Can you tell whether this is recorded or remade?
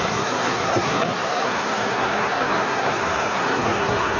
remade